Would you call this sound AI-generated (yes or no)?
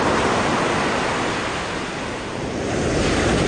no